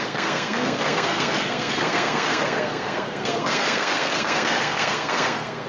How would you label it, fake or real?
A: fake